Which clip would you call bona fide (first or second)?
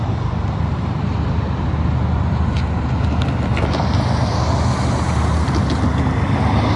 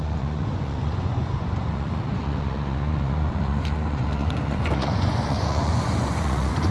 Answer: first